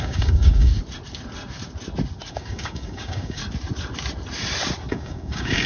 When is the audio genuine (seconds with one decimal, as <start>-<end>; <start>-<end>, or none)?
0.7-2.3; 3.4-4.9